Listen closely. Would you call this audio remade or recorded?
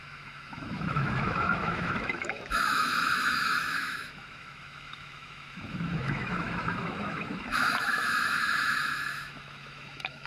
remade